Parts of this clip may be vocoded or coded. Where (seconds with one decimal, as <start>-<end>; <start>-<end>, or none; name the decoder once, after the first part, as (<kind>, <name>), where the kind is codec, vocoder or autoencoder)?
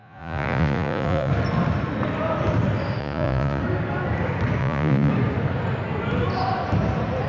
0.0-1.3 (vocoder, Vocos); 3.0-3.6; 4.6-5.1